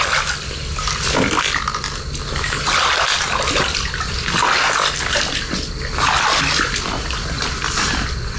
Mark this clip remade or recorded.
recorded